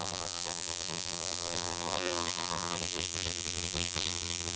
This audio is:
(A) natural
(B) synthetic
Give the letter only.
B